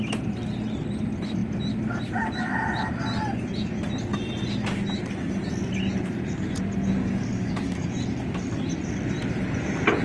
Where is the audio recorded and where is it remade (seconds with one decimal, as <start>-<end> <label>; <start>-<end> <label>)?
0.0-7.0 recorded; 7.0-7.9 remade; 7.9-10.0 recorded